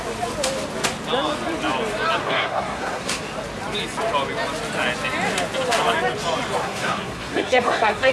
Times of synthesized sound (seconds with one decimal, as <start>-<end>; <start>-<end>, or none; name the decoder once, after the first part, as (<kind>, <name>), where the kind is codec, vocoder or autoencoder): 2.2-3.2 (codec, SNAC); 6.6-8.1